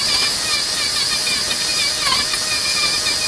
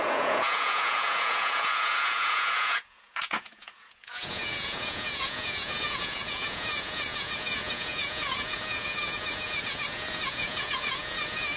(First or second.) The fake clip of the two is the second